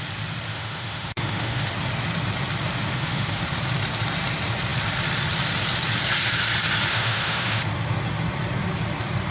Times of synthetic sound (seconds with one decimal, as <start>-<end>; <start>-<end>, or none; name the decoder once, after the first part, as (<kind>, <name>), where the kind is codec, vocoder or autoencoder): 0.5-1.7 (autoencoder, DAC-VAE); 2.9-3.4; 6.9-7.7